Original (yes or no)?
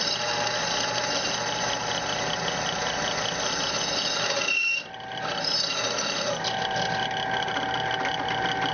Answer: yes